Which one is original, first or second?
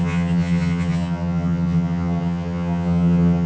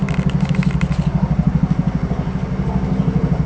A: second